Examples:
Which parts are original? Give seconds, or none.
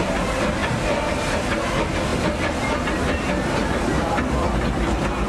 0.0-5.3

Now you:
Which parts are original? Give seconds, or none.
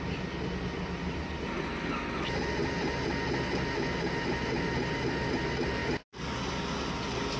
0.0-7.4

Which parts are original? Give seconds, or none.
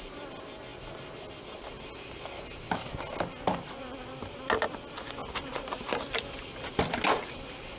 0.0-7.8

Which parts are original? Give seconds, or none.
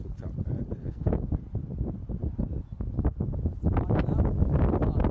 0.0-0.8; 1.3-5.1